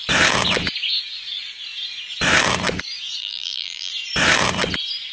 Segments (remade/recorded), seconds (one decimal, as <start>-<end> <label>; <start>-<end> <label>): 0.0-3.2 recorded; 3.2-3.9 remade; 3.9-5.1 recorded

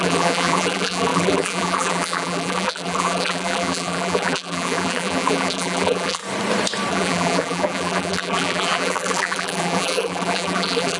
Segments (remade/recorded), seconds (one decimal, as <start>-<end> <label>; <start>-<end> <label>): 0.0-6.2 remade; 6.2-6.9 recorded; 6.9-11.0 remade

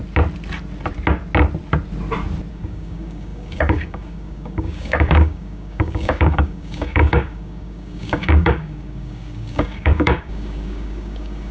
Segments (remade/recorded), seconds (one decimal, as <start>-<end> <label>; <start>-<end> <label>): 0.0-2.5 recorded; 2.5-11.5 remade

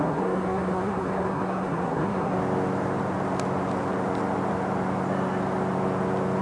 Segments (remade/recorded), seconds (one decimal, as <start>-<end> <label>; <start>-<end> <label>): 0.0-2.4 remade; 2.4-6.4 recorded

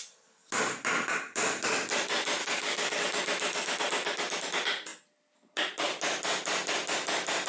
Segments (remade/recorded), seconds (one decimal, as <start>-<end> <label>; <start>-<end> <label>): 0.0-2.4 recorded; 2.4-3.0 remade; 3.0-7.5 recorded